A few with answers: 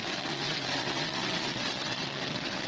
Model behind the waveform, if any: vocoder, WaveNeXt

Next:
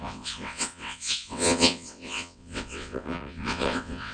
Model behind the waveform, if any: vocoder, WaveNeXt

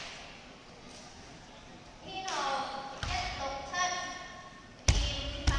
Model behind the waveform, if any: none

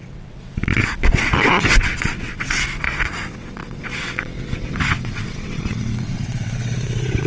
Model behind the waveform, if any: vocoder, WaveNeXt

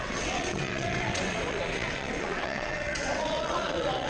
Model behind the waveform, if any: vocoder, WaveNeXt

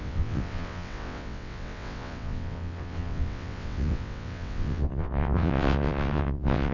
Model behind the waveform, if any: vocoder, WaveNeXt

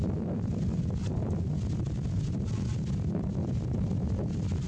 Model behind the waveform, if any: none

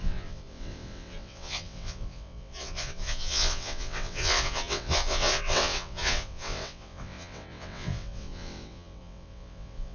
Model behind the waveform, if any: vocoder, WaveNeXt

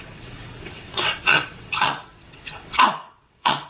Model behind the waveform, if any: vocoder, WaveNeXt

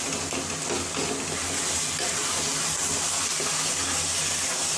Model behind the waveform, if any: none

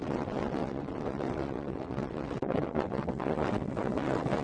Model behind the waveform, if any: vocoder, WaveNeXt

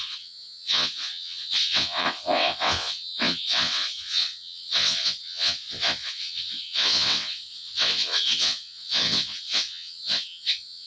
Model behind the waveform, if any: vocoder, WaveNeXt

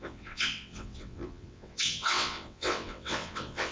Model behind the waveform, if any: vocoder, WaveNeXt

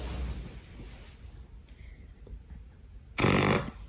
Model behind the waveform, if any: none